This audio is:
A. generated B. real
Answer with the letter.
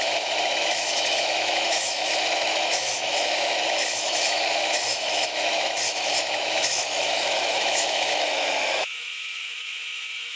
A